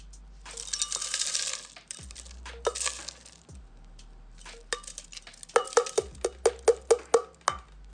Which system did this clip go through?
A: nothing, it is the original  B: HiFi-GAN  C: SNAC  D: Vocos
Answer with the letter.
A